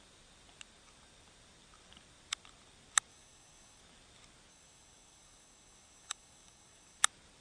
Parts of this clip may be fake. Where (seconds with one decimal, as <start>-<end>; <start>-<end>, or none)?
3.1-3.8; 4.5-7.0